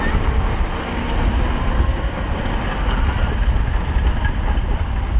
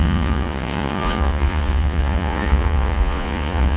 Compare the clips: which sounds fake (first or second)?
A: second